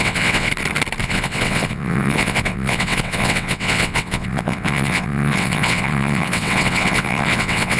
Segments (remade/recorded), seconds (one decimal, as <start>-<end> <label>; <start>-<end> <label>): 0.0-0.5 remade; 0.5-1.0 recorded; 1.0-7.8 remade